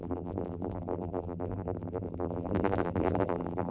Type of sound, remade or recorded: remade